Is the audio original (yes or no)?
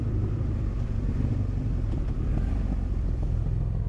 yes